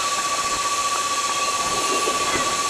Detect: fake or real real